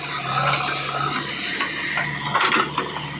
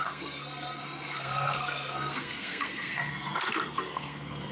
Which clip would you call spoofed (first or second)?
second